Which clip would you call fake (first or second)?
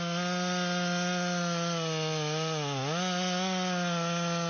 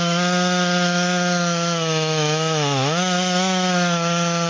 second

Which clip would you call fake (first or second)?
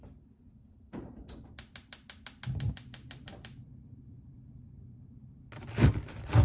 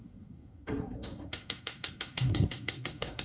second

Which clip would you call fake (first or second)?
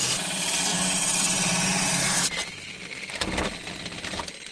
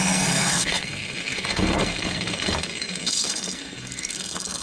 second